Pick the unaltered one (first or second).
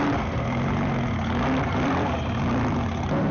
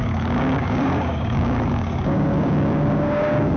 first